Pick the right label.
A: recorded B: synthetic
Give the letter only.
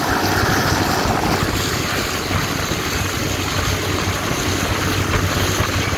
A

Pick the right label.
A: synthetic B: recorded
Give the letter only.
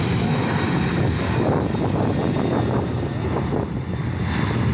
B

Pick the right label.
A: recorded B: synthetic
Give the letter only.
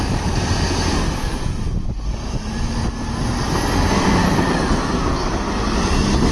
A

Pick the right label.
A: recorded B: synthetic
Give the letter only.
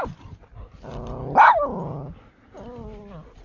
A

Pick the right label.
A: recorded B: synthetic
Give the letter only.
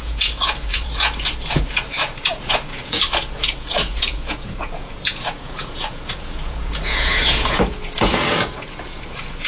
B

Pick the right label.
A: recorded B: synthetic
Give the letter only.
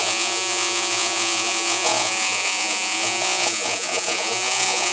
B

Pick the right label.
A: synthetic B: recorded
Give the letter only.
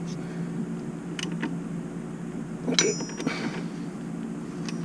B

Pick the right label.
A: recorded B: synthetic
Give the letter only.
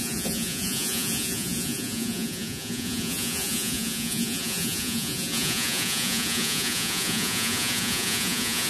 B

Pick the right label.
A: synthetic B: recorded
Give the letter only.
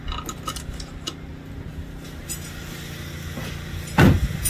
B